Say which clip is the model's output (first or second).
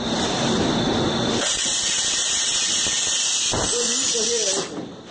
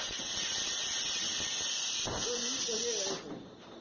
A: first